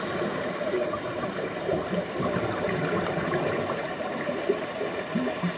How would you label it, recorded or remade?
remade